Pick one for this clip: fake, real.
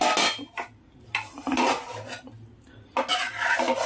real